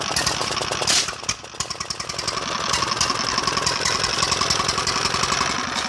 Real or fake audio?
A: real